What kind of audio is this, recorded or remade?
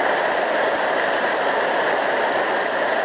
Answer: recorded